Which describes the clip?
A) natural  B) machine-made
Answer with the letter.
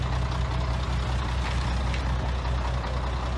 A